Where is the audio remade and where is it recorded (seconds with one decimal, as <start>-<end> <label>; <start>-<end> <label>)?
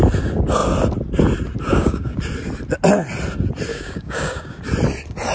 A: 0.0-1.7 recorded; 1.7-2.2 remade; 2.2-3.7 recorded; 3.7-4.6 remade; 4.6-5.3 recorded